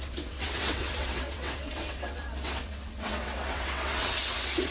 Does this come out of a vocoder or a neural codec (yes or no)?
yes